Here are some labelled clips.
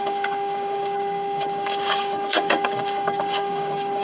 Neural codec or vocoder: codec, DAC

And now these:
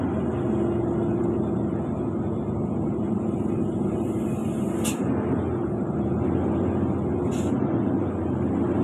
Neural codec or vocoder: none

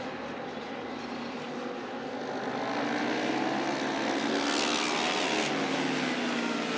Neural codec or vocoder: none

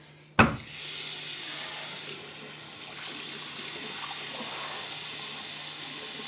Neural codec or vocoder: none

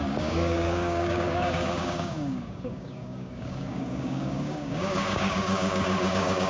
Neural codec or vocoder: codec, DAC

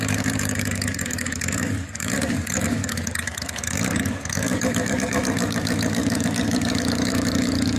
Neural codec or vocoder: codec, DAC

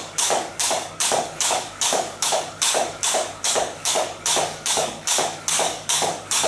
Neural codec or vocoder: codec, DAC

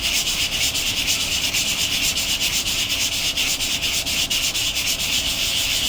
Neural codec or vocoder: none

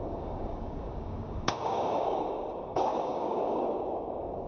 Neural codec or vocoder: codec, DAC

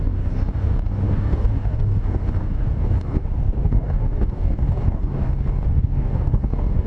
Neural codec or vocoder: codec, DAC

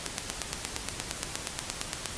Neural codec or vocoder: none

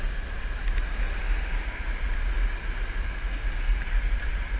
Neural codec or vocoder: none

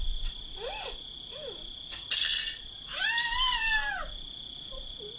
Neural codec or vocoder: none